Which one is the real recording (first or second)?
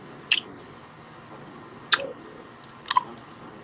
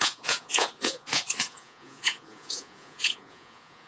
first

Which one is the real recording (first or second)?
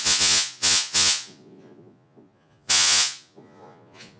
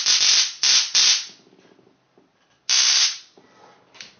second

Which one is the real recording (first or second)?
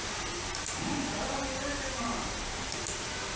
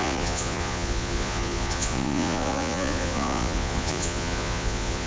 first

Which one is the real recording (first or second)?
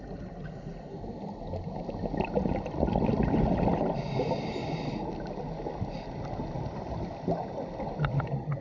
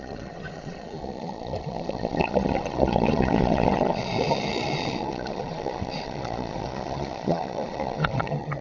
first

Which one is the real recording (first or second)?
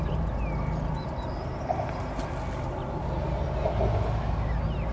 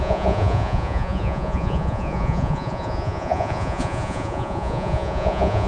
first